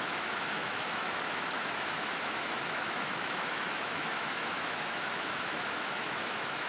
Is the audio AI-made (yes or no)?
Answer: yes